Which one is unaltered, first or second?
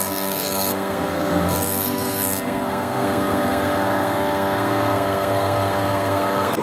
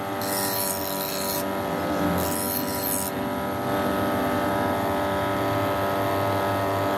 second